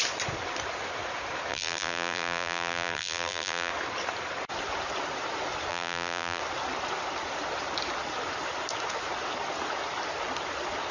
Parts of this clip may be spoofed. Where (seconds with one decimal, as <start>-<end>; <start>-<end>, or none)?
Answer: 1.5-3.7; 5.7-6.4